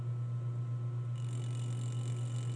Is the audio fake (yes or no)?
no